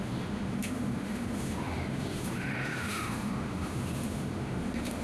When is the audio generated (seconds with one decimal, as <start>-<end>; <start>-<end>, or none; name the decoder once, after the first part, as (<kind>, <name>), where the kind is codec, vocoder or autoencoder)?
0.0-5.0 (autoencoder, DAC-VAE)

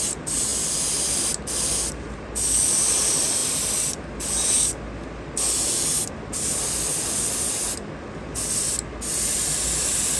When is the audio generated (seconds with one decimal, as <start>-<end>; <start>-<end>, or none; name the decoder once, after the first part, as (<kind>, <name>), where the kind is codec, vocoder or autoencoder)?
none

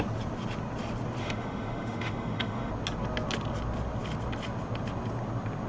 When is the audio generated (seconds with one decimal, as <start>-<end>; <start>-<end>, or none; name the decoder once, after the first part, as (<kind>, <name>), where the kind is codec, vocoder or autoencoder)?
1.2-2.7 (autoencoder, DAC-VAE)

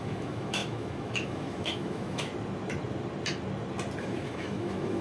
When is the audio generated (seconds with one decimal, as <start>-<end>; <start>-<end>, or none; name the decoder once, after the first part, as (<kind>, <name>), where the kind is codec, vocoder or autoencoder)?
0.0-2.3 (autoencoder, DAC-VAE); 4.0-5.0

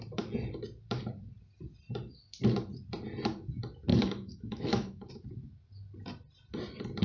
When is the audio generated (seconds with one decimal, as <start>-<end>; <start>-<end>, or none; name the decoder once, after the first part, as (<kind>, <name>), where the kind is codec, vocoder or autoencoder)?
3.9-5.1 (autoencoder, DAC-VAE)

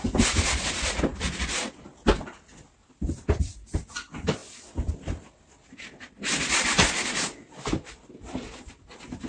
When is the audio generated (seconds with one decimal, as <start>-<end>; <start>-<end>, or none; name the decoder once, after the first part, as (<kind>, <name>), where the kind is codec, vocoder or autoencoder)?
none